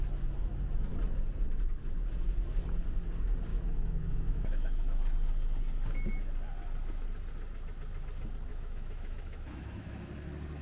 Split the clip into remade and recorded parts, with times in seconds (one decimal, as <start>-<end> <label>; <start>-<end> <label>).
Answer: 0.0-3.5 recorded; 3.5-5.0 remade; 5.0-8.5 recorded; 8.5-10.1 remade; 10.1-10.6 recorded